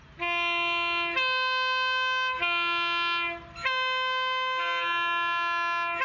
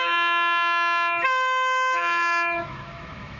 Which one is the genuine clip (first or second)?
first